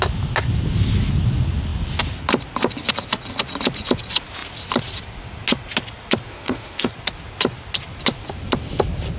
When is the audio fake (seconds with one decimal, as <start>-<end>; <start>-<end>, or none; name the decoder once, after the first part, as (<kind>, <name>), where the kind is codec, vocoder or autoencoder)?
6.3-6.9 (autoencoder, DAC-VAE)